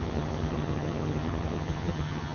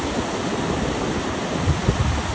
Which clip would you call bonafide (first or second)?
second